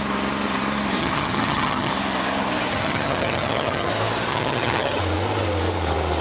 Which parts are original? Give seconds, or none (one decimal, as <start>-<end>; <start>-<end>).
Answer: 0.0-1.0; 1.9-2.7; 3.9-4.3; 5.0-6.2